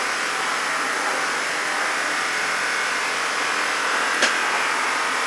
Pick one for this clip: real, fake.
real